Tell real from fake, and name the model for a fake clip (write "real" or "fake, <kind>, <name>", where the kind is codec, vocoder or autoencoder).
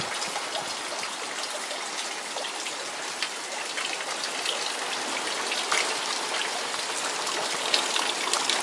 real